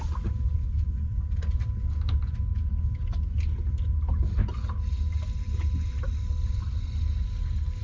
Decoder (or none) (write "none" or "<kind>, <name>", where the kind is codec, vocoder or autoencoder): none